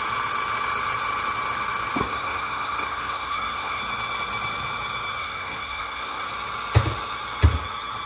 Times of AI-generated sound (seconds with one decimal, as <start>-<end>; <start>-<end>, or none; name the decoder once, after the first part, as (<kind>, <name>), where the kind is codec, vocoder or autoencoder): 2.0-3.8 (codec, SNAC); 5.2-6.3